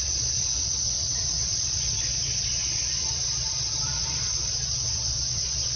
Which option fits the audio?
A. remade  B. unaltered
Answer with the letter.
A